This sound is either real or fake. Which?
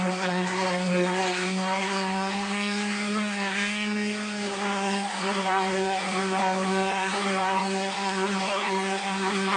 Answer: fake